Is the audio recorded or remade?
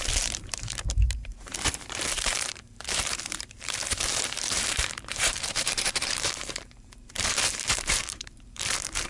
remade